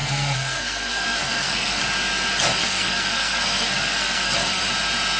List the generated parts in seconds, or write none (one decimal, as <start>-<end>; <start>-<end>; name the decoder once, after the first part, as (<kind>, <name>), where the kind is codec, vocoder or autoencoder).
0.0-1.8 (codec, SNAC); 2.6-4.6